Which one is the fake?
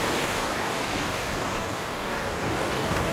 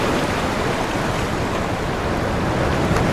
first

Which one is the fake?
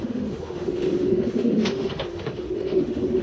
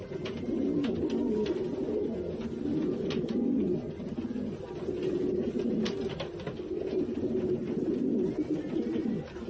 first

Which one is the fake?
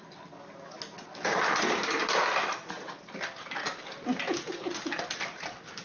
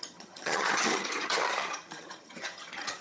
second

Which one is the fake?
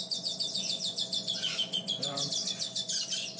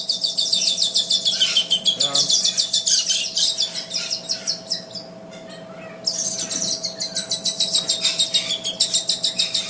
first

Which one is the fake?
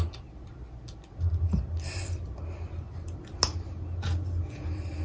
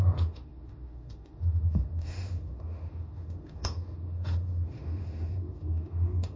second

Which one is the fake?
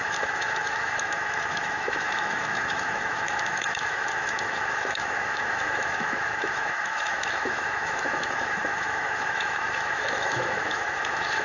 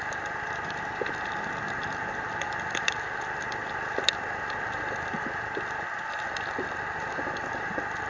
first